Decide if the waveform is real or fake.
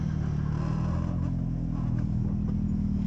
real